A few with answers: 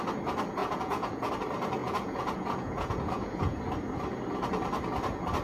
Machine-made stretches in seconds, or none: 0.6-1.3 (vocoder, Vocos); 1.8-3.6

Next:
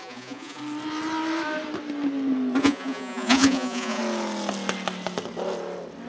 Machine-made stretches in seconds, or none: 0.0-0.6 (vocoder, Vocos); 2.6-4.0

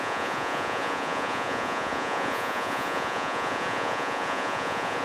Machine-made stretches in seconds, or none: 0.0-5.0 (vocoder, Vocos)

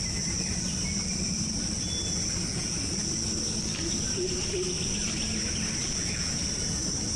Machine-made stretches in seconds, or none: 2.5-3.1 (vocoder, Vocos); 5.8-6.4